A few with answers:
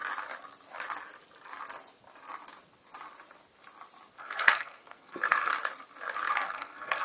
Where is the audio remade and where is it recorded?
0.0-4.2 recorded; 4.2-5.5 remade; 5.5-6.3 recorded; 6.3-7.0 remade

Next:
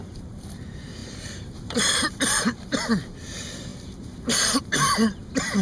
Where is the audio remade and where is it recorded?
0.0-5.6 remade